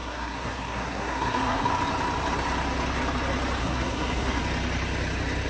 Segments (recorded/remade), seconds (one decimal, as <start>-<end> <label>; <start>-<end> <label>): 0.0-1.7 remade; 1.7-3.6 recorded; 3.6-4.4 remade; 4.4-5.5 recorded